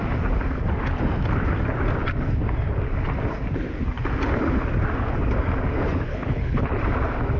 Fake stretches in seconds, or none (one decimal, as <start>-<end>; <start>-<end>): 6.1-6.8